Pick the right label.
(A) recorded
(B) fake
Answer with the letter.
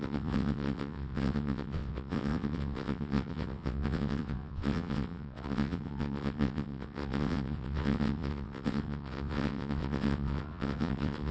B